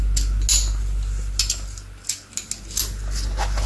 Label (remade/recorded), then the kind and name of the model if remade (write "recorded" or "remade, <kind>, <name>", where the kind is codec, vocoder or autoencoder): recorded